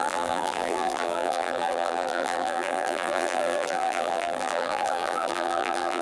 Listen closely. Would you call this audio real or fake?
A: fake